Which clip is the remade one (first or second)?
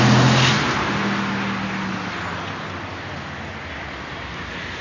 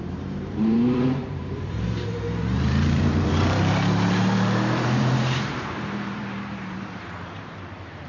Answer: second